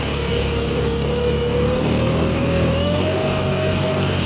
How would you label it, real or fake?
fake